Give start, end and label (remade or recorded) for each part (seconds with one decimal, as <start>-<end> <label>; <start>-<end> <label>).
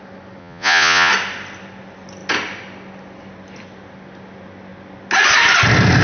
0.0-0.4 recorded; 0.4-1.1 remade; 1.1-6.0 recorded